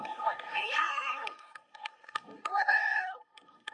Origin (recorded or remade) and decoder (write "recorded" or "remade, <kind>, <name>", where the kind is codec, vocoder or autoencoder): remade, codec, SNAC